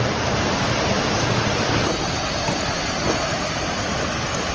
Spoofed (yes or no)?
no